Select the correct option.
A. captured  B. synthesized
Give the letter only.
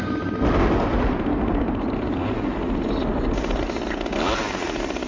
A